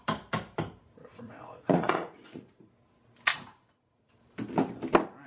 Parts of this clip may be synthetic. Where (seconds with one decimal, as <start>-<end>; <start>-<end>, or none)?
1.1-2.7; 3.3-4.1

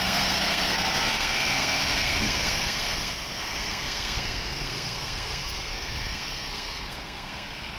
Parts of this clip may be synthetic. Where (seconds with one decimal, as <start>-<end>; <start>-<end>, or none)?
0.0-7.8